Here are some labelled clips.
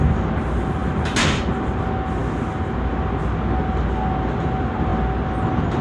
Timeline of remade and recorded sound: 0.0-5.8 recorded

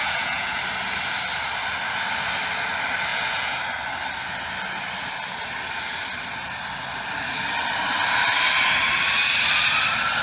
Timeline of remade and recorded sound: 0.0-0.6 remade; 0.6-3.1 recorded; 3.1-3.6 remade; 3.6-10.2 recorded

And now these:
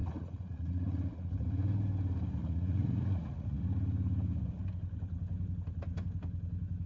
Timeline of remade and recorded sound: 0.0-1.3 remade; 1.3-2.4 recorded; 2.4-3.6 remade; 3.6-6.9 recorded

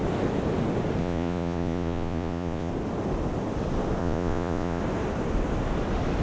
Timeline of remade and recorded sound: 0.0-1.0 recorded; 1.0-2.7 remade; 2.7-4.0 recorded; 4.0-4.8 remade; 4.8-6.2 recorded

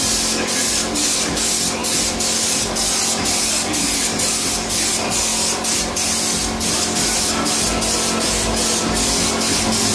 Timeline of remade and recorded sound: 0.0-9.9 recorded

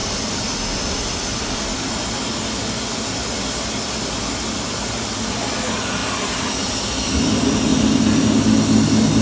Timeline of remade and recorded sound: 0.0-9.2 recorded

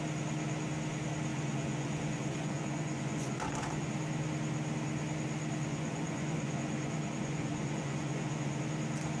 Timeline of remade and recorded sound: 0.0-1.3 recorded; 1.3-3.9 remade; 3.9-5.7 recorded; 5.7-8.6 remade; 8.6-9.2 recorded

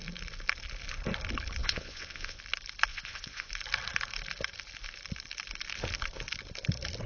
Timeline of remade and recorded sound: 0.0-1.6 recorded; 1.6-2.4 remade; 2.4-2.9 recorded; 2.9-3.5 remade; 3.5-7.1 recorded